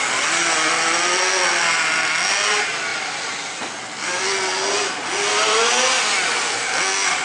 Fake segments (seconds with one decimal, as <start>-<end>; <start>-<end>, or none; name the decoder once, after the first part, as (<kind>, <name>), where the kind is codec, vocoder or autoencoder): none

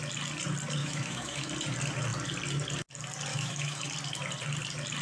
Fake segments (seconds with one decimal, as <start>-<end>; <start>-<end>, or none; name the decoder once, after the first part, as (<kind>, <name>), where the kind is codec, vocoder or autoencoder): 0.8-1.5 (autoencoder, DAC-VAE); 3.3-3.9

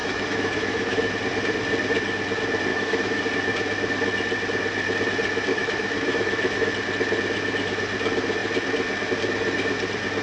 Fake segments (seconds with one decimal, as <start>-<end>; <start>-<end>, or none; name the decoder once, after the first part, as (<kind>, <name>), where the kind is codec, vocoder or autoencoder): 0.0-1.1 (autoencoder, DAC-VAE); 2.7-3.2; 5.5-6.7

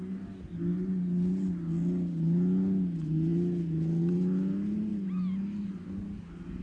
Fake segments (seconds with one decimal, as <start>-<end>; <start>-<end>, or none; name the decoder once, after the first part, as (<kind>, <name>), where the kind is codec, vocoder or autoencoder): none

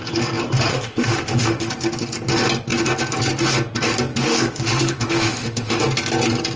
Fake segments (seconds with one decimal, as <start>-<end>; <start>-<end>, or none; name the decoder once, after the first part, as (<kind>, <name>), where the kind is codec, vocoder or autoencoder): 0.7-1.7 (autoencoder, DAC-VAE); 4.1-5.8

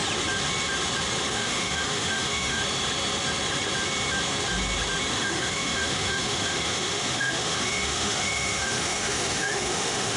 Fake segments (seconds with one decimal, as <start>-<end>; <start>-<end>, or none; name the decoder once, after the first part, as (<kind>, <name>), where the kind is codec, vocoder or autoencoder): 1.3-2.6 (autoencoder, DAC-VAE); 5.1-10.2

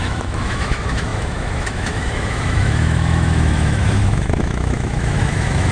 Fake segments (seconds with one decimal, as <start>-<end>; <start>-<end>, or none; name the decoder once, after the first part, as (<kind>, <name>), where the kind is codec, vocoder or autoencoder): 0.0-5.7 (autoencoder, DAC-VAE)